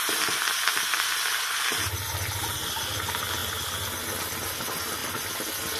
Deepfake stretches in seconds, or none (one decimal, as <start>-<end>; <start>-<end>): none